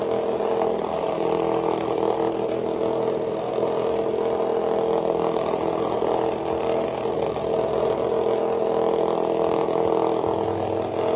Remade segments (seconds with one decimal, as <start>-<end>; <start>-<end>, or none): none